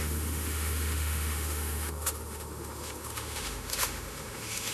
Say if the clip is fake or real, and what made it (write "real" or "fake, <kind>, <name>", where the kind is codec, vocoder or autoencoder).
fake, autoencoder, DAC-VAE